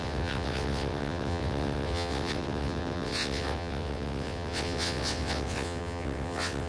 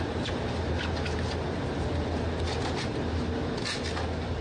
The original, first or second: second